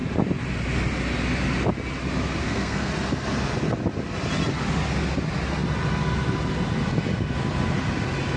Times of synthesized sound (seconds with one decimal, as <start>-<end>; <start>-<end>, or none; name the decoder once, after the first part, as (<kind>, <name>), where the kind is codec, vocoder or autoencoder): 2.4-2.9 (codec, SNAC)